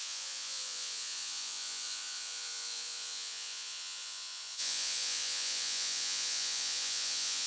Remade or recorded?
remade